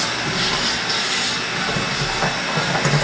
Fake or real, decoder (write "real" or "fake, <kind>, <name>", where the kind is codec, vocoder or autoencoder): real